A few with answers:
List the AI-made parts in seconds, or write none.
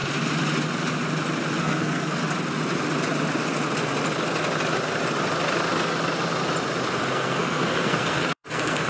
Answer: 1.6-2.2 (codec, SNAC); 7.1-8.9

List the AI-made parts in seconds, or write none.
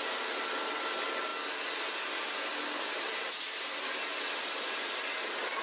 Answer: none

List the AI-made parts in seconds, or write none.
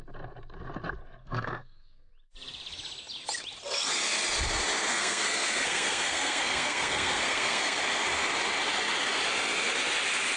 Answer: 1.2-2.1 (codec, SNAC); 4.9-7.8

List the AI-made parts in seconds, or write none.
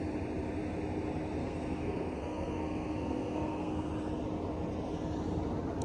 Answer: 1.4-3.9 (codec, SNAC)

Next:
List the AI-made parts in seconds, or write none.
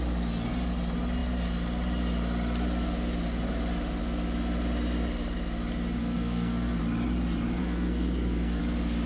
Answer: 6.0-6.8 (codec, SNAC); 7.6-8.6